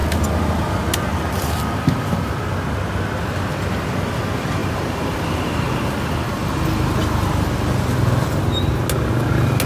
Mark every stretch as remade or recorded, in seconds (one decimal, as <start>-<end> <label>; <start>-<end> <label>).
0.0-1.1 recorded; 1.1-2.3 remade; 2.3-4.6 recorded; 4.6-5.2 remade; 5.2-9.7 recorded